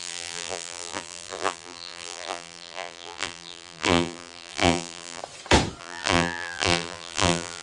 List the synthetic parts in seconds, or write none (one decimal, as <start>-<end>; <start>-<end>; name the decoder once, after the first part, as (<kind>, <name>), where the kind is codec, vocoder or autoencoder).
0.0-5.2 (vocoder, BigVGAN v2); 5.8-7.6